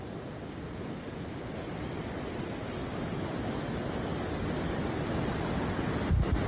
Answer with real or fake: real